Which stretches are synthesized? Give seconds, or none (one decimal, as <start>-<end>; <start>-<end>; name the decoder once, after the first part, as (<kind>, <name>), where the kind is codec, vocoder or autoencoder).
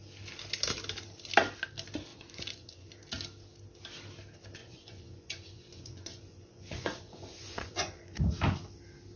2.1-2.9 (vocoder, Vocos); 4.6-8.2